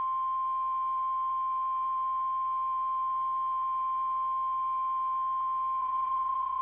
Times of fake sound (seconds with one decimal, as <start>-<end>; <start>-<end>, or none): 5.8-6.6